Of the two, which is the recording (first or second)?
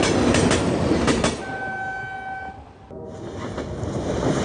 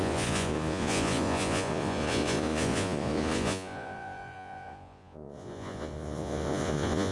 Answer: first